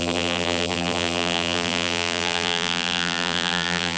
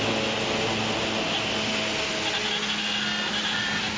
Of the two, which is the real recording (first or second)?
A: second